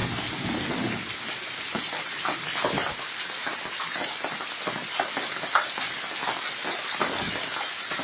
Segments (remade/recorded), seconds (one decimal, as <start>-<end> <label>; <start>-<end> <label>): 0.0-8.0 recorded

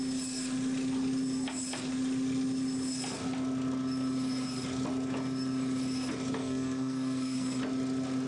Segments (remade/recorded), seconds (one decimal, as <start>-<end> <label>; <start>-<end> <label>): 0.0-6.4 recorded; 6.4-7.6 remade; 7.6-8.3 recorded

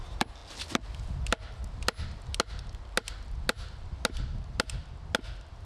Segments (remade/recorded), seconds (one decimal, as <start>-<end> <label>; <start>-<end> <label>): 0.0-5.7 recorded

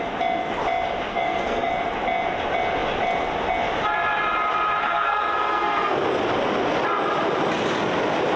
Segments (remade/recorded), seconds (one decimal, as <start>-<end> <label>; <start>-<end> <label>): 0.0-1.1 recorded; 1.1-1.7 remade; 1.7-4.8 recorded; 4.8-6.0 remade; 6.0-8.4 recorded

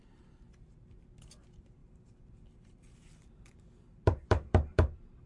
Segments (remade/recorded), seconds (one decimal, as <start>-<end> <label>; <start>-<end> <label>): 0.0-1.8 recorded; 1.8-5.3 remade

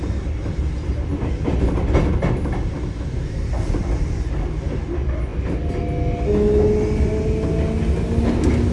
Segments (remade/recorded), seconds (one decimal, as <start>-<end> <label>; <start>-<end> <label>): 0.0-8.7 recorded

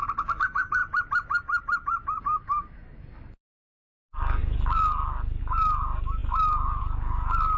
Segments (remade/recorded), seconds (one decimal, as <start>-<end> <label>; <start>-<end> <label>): 0.0-0.8 remade; 0.8-2.2 recorded; 2.2-7.6 remade

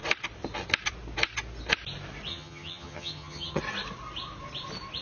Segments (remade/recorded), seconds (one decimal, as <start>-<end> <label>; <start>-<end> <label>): 0.0-2.3 recorded; 2.3-3.6 remade; 3.6-5.0 recorded